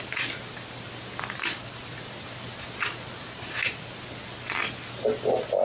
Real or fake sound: real